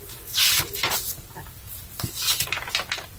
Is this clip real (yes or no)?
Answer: yes